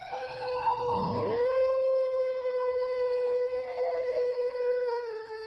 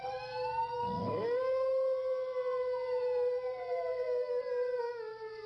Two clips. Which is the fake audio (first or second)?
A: first